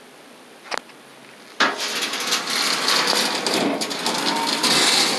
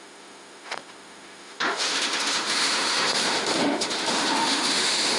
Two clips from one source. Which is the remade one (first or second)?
second